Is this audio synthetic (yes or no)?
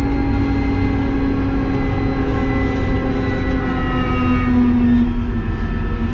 no